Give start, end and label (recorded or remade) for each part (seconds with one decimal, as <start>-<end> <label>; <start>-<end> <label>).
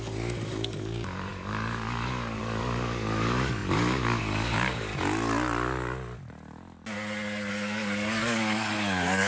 0.0-4.9 remade; 4.9-7.5 recorded; 7.5-9.3 remade